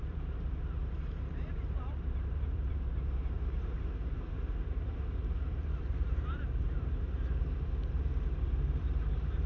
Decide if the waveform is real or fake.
fake